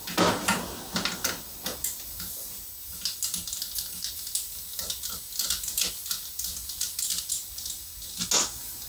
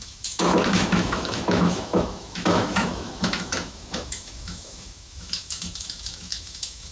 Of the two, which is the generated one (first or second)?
second